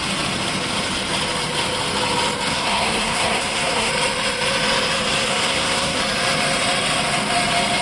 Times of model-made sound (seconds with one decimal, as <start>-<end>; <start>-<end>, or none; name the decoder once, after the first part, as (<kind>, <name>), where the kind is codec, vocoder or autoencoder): 2.5-3.9 (codec, SNAC); 5.3-6.0